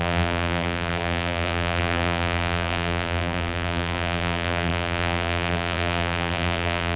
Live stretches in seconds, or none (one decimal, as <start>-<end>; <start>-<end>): none